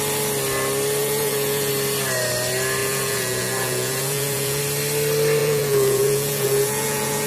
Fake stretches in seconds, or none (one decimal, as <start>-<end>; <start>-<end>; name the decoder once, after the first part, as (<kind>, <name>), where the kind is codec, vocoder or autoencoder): 1.0-1.7 (vocoder, Vocos); 2.8-4.6; 5.4-7.3